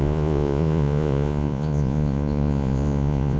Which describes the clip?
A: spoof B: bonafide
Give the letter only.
A